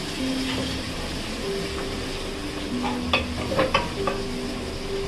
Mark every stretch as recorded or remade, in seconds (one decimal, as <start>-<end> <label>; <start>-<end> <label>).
0.0-5.1 recorded